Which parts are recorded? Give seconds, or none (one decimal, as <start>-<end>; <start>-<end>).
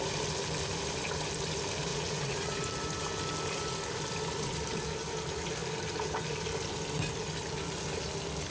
0.0-1.9; 2.6-8.5